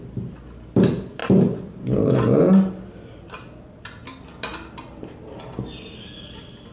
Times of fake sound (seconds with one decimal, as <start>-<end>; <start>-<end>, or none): none